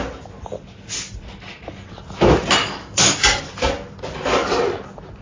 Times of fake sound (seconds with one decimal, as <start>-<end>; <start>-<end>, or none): 2.6-3.5